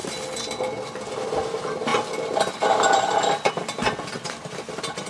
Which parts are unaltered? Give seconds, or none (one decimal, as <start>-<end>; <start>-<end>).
0.0-5.1